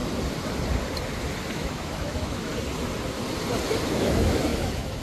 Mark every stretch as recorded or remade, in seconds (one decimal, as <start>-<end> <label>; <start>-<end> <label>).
0.0-1.5 recorded; 1.5-2.5 remade; 2.5-3.9 recorded; 3.9-5.0 remade